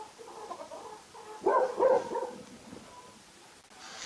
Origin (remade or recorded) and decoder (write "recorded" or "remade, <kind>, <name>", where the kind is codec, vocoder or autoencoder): recorded